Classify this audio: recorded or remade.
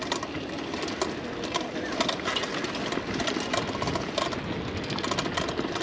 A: recorded